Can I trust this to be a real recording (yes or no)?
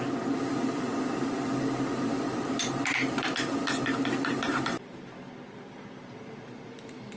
yes